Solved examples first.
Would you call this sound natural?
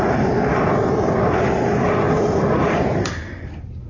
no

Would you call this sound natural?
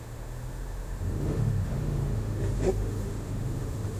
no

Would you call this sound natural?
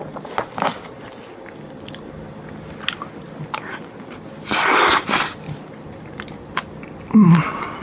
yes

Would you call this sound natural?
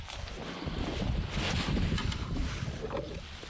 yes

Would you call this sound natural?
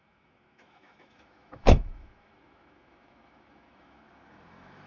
no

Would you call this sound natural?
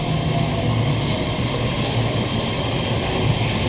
yes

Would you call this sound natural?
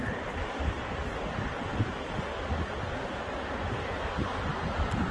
yes